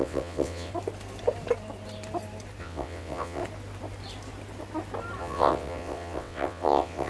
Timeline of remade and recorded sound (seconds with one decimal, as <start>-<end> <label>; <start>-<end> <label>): 0.0-0.7 remade; 0.7-2.6 recorded; 2.6-3.4 remade; 3.4-5.2 recorded; 5.2-7.1 remade